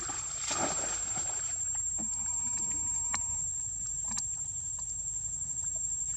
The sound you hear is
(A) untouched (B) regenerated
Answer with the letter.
A